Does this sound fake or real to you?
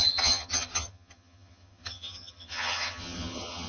fake